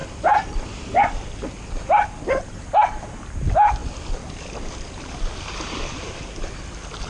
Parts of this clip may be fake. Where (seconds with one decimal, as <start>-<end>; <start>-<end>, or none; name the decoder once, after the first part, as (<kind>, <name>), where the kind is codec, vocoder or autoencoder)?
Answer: none